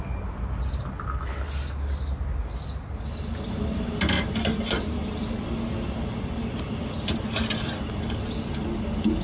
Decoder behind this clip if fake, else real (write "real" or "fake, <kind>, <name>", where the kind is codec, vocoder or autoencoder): real